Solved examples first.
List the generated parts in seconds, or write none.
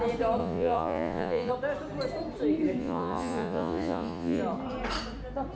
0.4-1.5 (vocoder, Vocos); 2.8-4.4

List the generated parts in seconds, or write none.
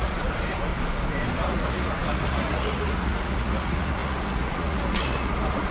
0.0-0.7 (vocoder, Vocos); 1.3-5.7